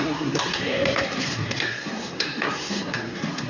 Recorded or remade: remade